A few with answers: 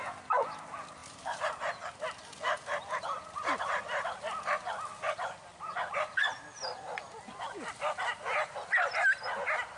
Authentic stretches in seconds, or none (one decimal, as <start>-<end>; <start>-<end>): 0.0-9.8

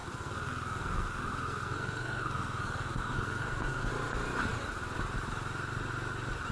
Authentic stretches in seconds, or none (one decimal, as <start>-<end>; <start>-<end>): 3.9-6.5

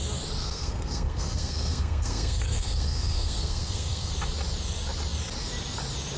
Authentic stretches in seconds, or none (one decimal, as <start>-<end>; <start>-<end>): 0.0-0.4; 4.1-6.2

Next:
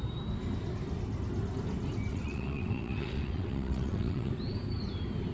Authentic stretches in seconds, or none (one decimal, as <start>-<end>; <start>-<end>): 0.0-2.1; 4.3-5.3